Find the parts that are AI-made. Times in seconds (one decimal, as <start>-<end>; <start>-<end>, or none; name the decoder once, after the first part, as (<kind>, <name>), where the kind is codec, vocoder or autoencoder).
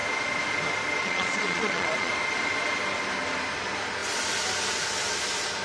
1.0-2.1 (vocoder, Vocos)